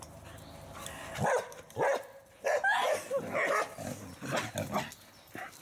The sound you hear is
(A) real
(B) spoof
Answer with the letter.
A